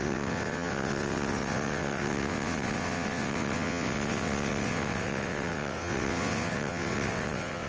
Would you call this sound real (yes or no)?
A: no